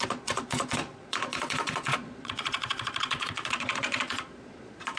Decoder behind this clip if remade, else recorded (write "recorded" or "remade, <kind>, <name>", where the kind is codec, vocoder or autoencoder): remade, vocoder, Vocos